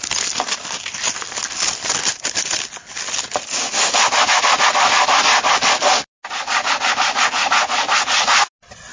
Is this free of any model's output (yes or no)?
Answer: yes